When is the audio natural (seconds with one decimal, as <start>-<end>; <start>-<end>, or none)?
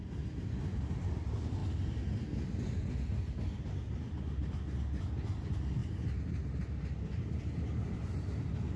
0.0-8.8